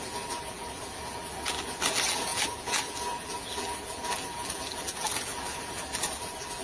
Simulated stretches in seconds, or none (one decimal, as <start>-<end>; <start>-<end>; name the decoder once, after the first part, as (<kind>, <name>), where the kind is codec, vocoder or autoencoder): 0.0-6.6 (vocoder, BigVGAN v2)